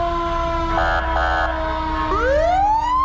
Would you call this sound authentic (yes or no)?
yes